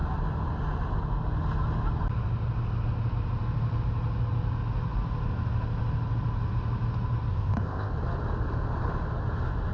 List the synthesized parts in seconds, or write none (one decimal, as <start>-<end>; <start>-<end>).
7.3-7.9